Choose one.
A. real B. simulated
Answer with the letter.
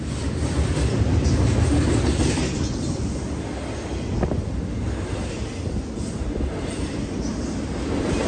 A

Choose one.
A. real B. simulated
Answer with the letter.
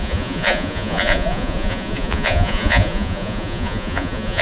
B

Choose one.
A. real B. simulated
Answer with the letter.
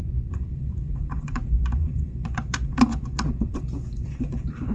B